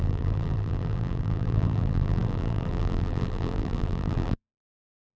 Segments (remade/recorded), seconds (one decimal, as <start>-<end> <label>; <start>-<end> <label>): 0.0-5.2 remade